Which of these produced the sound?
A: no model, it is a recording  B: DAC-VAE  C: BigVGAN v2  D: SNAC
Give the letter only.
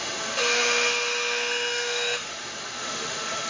B